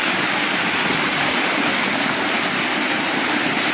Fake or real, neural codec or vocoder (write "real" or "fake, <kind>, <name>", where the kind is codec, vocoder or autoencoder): real